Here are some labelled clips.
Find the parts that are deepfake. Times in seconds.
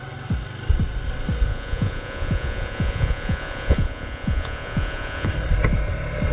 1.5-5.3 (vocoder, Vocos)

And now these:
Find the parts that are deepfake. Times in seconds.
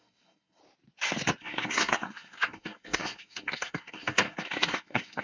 0.0-0.6 (codec, SNAC); 1.4-5.2